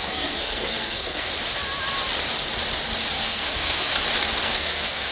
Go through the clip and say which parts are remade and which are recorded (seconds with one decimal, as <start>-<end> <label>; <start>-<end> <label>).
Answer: 0.0-1.3 remade; 1.3-3.1 recorded; 3.1-3.9 remade; 3.9-4.4 recorded; 4.4-5.1 remade